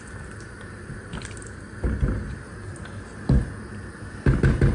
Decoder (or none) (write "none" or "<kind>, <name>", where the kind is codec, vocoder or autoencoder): none